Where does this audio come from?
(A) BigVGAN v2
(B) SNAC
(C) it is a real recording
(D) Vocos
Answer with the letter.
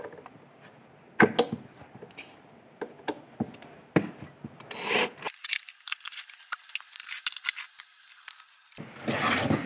C